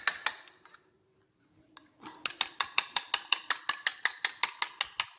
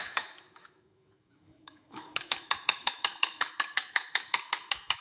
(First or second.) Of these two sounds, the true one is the first